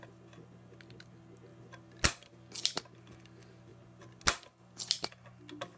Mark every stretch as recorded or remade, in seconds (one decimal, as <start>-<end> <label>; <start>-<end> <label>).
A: 0.0-5.8 recorded